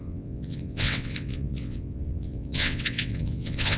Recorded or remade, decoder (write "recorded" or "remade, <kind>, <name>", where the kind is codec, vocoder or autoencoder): remade, vocoder, WaveNeXt